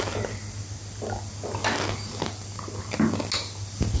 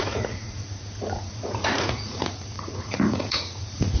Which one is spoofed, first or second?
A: second